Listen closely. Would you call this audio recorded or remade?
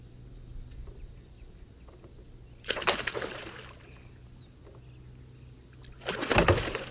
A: recorded